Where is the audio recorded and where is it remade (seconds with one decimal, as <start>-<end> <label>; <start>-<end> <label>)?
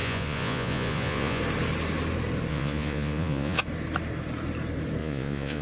0.0-1.4 remade; 1.4-2.5 recorded; 2.5-3.6 remade; 3.6-5.0 recorded; 5.0-5.6 remade